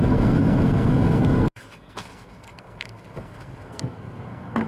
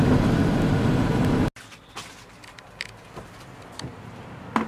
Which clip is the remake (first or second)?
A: first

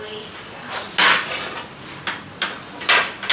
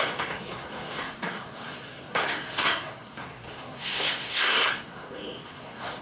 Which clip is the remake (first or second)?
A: second